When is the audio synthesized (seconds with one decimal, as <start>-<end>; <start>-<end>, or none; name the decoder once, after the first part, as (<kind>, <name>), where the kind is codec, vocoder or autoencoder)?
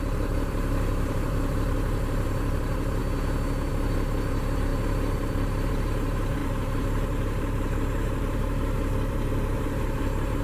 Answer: 0.0-3.0 (vocoder, BigVGAN v2); 3.7-10.4